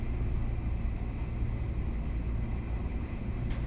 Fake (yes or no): no